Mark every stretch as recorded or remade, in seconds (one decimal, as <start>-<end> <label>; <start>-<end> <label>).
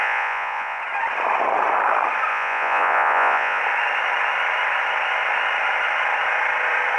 0.0-0.8 remade; 0.8-2.3 recorded; 2.3-3.6 remade; 3.6-7.0 recorded